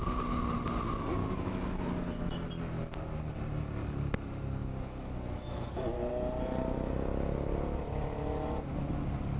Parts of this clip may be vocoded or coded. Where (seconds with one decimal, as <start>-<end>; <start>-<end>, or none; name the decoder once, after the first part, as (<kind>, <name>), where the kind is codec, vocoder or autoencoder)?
1.2-2.5 (autoencoder, DAC-VAE); 4.6-6.1